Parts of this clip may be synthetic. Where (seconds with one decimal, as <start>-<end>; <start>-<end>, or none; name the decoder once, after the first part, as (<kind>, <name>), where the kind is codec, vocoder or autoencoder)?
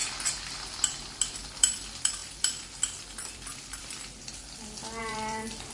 1.3-5.7 (vocoder, BigVGAN v2)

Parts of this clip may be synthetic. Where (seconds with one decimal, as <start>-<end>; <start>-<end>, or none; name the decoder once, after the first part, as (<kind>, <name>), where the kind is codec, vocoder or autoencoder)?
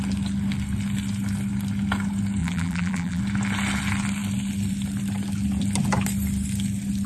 2.4-3.2 (vocoder, BigVGAN v2)